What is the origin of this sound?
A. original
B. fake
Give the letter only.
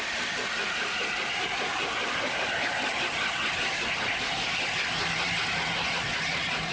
A